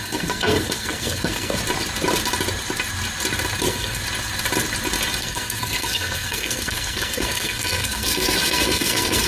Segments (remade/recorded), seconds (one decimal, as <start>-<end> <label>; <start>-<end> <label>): 0.0-1.6 remade; 1.6-3.6 recorded; 3.6-4.0 remade; 4.0-5.2 recorded; 5.2-9.3 remade